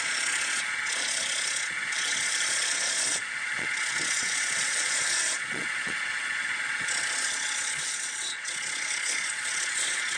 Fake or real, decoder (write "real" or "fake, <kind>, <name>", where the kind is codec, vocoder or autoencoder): fake, vocoder, Vocos